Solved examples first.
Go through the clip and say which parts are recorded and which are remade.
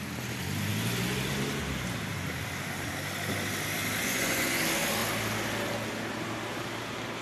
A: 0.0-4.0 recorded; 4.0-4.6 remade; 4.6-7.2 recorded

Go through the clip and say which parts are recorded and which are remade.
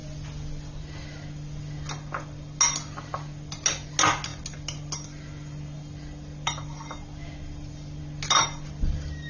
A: 0.0-9.3 recorded